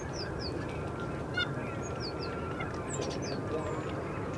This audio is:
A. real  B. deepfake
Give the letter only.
A